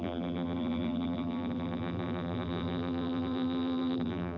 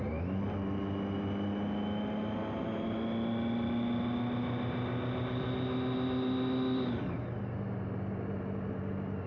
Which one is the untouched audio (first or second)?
second